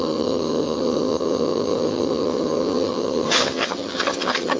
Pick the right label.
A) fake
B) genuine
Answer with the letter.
A